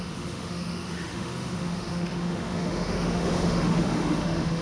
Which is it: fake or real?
fake